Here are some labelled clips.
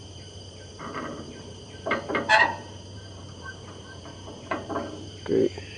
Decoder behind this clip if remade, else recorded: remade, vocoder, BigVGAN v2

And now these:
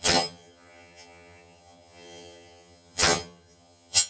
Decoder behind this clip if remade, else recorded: remade, vocoder, HiFi-GAN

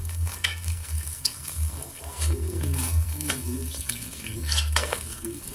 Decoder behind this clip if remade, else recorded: remade, codec, SNAC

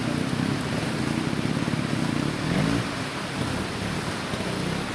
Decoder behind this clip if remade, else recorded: recorded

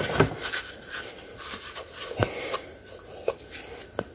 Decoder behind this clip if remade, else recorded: recorded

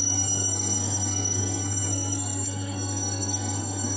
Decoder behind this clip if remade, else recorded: remade, codec, SNAC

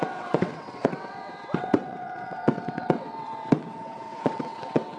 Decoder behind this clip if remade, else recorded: remade, vocoder, WaveNeXt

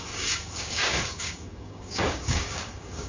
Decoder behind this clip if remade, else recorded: remade, codec, DAC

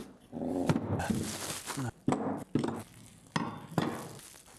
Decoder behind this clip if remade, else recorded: recorded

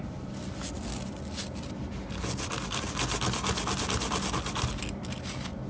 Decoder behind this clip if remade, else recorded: recorded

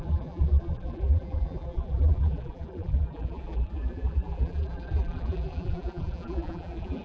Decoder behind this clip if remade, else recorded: remade, vocoder, BigVGAN v2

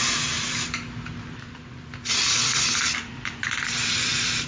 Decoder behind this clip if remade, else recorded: remade, vocoder, BigVGAN v2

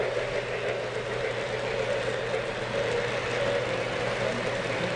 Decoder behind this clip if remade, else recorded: recorded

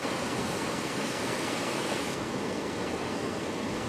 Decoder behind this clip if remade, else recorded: remade, codec, SNAC